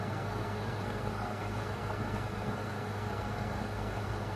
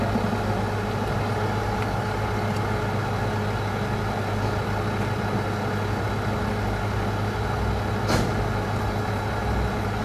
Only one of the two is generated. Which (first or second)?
first